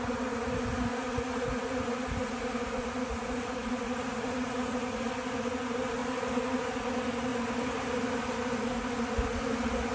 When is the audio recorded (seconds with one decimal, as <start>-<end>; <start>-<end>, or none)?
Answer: 0.0-0.9; 5.0-6.0; 6.7-9.9